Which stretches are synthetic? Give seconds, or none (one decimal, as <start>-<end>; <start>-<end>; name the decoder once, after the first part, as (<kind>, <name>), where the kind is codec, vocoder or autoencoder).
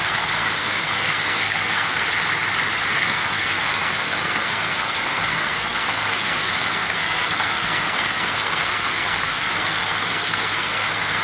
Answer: 0.0-2.1 (codec, SNAC); 2.9-11.2